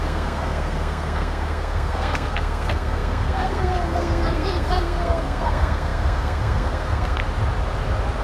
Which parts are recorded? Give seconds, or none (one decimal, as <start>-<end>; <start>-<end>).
7.2-8.2